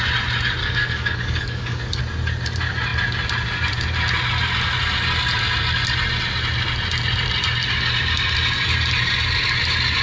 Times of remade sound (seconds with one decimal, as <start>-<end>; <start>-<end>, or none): 0.6-2.0